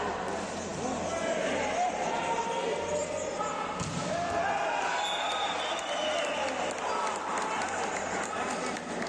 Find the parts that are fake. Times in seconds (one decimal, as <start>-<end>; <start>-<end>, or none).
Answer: none